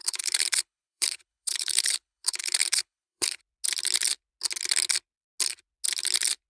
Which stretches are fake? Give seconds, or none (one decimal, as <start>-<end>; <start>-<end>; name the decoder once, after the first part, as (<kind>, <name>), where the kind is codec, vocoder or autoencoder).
0.0-3.4 (codec, HILCodec)